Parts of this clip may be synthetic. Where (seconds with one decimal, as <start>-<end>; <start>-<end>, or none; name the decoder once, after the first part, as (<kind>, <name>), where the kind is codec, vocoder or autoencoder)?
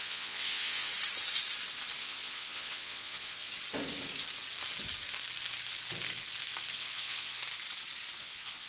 0.0-0.9 (vocoder, Vocos); 2.0-3.5; 6.7-7.4; 8.2-8.7